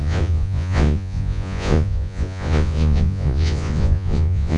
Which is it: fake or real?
fake